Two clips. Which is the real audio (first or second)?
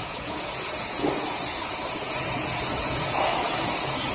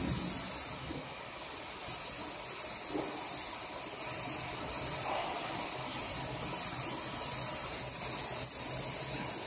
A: second